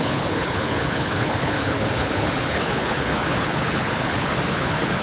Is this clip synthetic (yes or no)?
yes